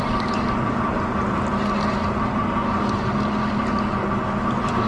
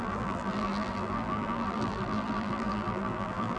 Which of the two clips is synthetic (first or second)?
second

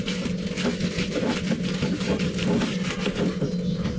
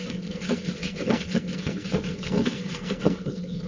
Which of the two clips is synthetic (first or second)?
second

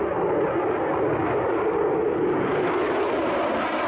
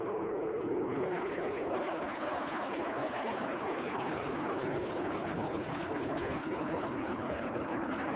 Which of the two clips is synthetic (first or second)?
second